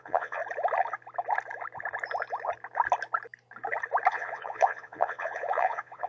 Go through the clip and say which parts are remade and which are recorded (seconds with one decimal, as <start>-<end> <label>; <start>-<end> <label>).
0.0-0.4 remade; 0.4-4.1 recorded; 4.1-6.1 remade